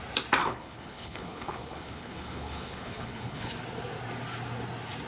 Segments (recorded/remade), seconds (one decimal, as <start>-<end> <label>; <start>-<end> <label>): 0.0-0.4 recorded; 0.4-3.5 remade; 3.5-5.1 recorded